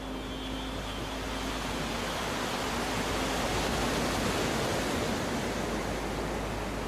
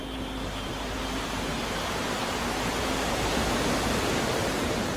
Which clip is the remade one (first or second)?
second